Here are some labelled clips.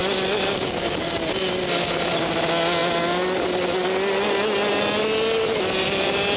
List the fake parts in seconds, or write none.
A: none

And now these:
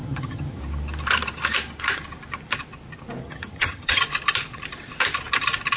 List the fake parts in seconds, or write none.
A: 0.0-0.6; 3.2-4.0